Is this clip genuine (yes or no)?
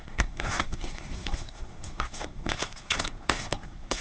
no